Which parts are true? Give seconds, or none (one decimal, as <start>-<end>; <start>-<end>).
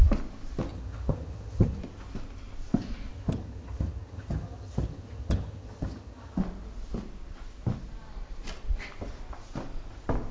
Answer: 0.0-0.7; 1.8-3.1; 6.4-10.3